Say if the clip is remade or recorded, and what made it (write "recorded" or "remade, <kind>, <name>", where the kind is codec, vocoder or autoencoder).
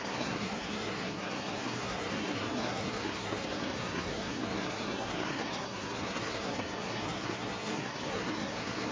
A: remade, codec, SNAC